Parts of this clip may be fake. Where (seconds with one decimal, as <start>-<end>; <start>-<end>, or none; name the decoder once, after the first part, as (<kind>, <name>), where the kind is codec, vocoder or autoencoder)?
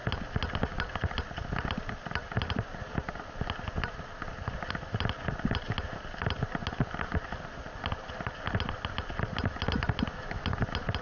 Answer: none